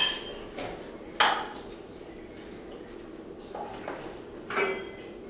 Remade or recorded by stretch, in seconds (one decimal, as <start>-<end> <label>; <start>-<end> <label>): 0.0-5.3 recorded